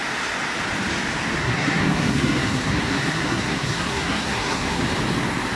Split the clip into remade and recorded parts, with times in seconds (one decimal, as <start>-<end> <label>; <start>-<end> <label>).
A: 0.0-1.4 recorded; 1.4-4.8 remade; 4.8-5.6 recorded